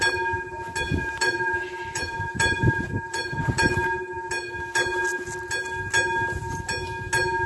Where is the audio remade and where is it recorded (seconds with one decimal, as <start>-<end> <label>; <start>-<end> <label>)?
0.0-1.0 recorded; 1.0-4.3 remade; 4.3-7.5 recorded